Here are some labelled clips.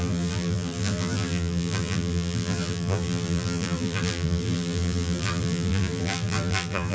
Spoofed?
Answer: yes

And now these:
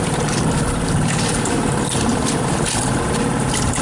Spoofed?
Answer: no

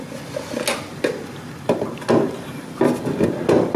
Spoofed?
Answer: no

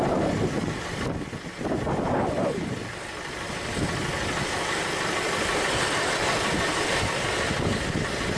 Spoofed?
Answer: yes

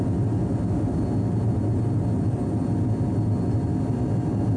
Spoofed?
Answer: no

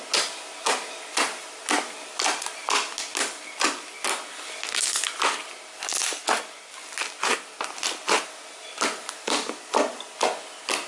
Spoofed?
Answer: no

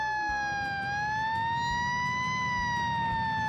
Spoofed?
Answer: no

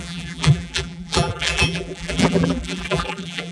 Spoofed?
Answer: yes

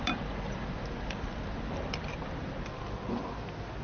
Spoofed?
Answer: no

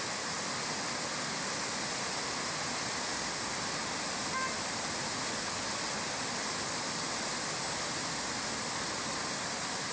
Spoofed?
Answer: no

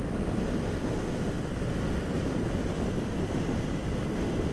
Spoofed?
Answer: yes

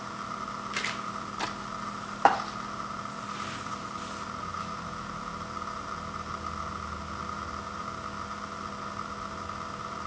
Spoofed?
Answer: no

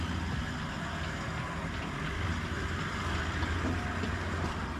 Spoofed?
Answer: no